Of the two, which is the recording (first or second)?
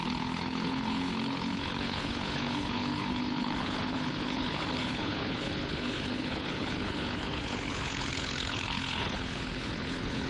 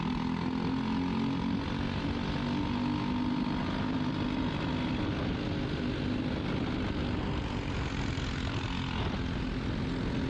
second